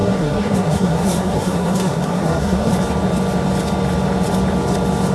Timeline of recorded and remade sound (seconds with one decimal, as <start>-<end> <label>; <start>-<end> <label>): 0.0-2.7 remade; 2.7-5.1 recorded